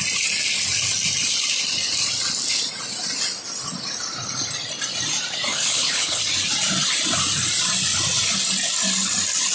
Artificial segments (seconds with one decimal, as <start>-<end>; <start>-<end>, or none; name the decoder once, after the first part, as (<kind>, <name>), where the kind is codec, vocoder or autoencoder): 5.5-6.2 (codec, HILCodec)